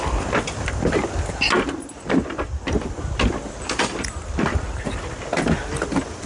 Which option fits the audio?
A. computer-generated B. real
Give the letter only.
B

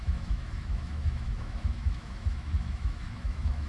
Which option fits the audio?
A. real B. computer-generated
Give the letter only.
B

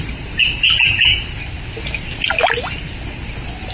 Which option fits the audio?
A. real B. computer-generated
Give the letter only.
A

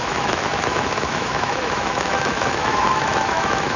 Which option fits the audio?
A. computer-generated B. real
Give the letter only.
A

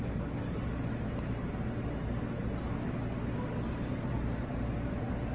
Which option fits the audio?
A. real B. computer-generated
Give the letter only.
A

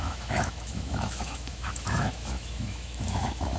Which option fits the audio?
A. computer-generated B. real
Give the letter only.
A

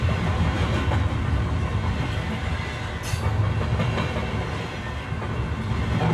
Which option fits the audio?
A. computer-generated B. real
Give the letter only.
B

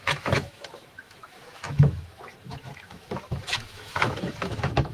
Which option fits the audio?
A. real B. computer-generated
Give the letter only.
B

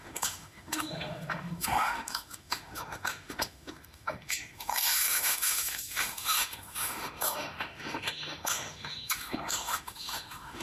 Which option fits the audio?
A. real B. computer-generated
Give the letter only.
B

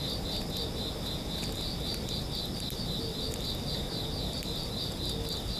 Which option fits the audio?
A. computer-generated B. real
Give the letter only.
B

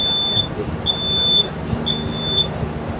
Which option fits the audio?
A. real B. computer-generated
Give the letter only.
A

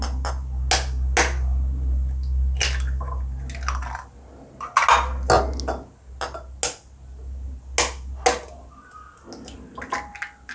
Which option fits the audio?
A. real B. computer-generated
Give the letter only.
A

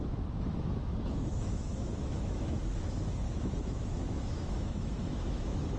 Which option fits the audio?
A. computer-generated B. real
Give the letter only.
A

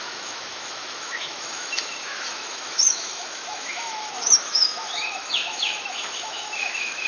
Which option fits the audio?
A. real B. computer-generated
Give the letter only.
B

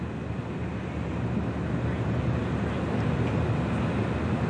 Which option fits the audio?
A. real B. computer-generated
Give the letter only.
A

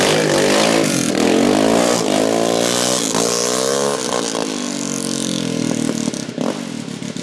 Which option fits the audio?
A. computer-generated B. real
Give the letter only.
B